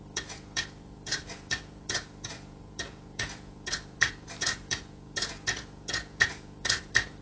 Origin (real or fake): fake